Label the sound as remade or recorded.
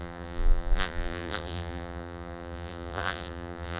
remade